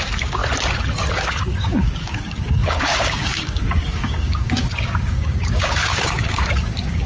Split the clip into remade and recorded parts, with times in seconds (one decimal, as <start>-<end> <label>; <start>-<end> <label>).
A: 0.0-0.4 remade; 0.4-1.1 recorded; 1.1-7.1 remade